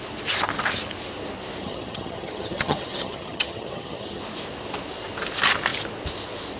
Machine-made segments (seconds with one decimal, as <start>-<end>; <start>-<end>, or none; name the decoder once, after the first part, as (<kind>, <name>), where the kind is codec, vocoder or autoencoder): 1.6-4.2 (vocoder, HiFi-GAN)